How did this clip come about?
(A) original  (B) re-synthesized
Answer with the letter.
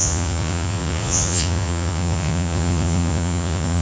B